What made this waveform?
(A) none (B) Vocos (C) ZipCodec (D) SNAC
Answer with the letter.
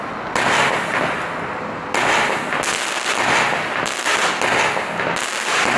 A